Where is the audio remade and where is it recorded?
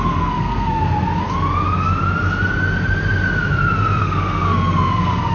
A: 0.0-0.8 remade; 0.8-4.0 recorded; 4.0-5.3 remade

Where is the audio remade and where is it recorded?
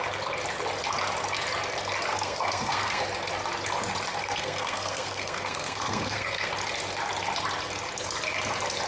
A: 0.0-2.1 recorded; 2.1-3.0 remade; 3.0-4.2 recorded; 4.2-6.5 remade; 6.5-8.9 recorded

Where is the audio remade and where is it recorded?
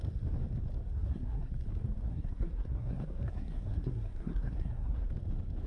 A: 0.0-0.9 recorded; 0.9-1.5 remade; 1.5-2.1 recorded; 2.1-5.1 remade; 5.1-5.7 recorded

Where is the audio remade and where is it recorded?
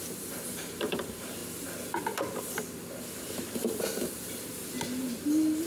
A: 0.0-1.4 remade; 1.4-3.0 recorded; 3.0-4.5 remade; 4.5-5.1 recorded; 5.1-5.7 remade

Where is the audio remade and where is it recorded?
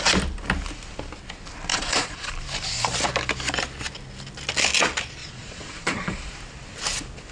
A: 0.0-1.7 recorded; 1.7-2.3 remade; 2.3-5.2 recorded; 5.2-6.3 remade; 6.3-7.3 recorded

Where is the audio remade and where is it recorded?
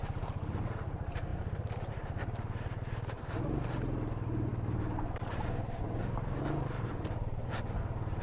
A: 0.0-8.2 remade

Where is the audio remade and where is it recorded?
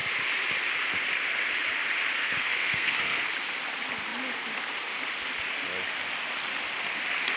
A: 0.0-2.2 recorded; 2.2-3.3 remade; 3.3-7.4 recorded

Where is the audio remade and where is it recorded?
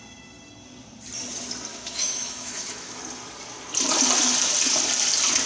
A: 0.0-1.7 recorded; 1.7-3.0 remade; 3.0-5.5 recorded